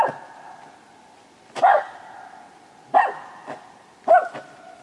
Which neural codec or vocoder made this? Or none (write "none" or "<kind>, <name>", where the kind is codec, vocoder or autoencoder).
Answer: none